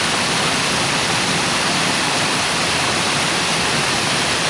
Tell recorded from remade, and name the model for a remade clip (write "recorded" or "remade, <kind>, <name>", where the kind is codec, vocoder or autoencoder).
recorded